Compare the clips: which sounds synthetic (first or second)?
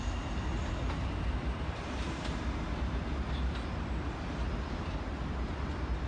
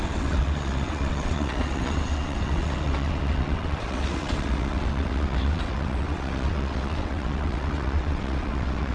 second